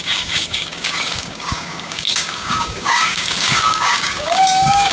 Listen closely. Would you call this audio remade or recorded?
remade